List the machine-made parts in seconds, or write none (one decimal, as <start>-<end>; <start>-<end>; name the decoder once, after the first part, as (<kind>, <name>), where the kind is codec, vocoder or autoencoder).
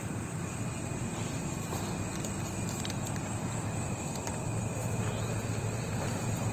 0.0-2.1 (vocoder, BigVGAN v2); 5.4-6.5